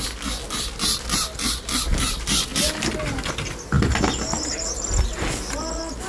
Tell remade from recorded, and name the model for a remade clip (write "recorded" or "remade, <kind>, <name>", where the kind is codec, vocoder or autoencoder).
recorded